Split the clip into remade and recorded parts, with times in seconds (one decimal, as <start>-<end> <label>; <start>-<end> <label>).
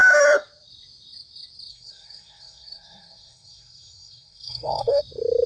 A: 0.0-1.7 recorded; 1.7-5.0 remade; 5.0-5.5 recorded